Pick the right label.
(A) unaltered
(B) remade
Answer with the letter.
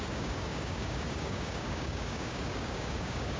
B